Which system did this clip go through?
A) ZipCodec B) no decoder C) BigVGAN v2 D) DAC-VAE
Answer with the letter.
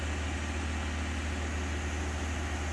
B